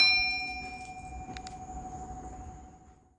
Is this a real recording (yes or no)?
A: yes